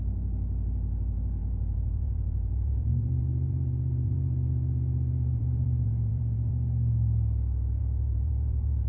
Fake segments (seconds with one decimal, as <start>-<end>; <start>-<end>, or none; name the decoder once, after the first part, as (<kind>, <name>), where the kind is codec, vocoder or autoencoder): 0.0-6.5 (vocoder, Vocos); 7.8-8.9